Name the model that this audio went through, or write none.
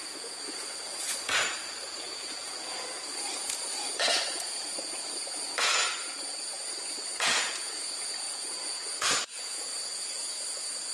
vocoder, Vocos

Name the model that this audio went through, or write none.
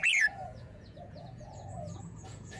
vocoder, Vocos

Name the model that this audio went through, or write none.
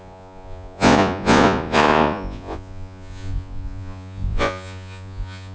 vocoder, Vocos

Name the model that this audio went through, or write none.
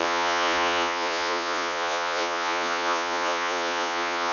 vocoder, Vocos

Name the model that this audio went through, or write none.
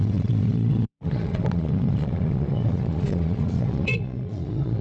vocoder, Vocos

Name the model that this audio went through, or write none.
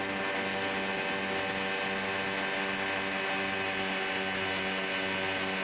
none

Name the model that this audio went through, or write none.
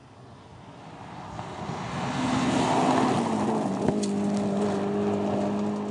none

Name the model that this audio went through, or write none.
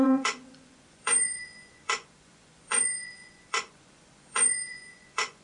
vocoder, Vocos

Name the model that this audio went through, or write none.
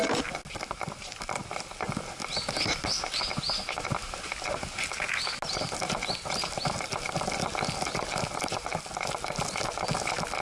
none